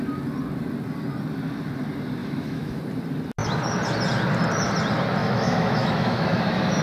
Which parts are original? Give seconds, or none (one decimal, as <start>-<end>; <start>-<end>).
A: 0.0-2.2; 2.8-5.2